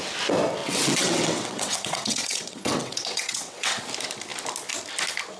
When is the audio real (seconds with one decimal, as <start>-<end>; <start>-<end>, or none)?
0.0-0.6; 3.8-5.4